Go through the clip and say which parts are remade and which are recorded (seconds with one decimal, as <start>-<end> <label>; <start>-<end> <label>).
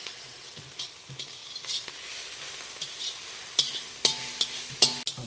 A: 0.0-0.6 remade; 0.6-5.3 recorded